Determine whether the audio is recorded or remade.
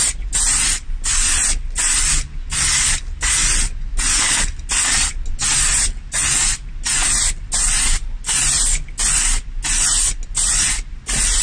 recorded